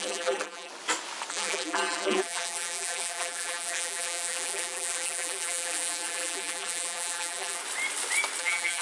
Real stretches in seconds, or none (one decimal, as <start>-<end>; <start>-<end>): 0.7-1.3; 7.6-8.4